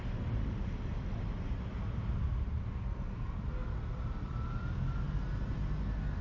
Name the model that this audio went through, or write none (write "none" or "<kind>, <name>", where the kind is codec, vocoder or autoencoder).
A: none